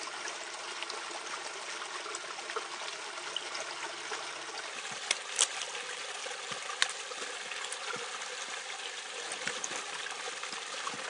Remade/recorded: recorded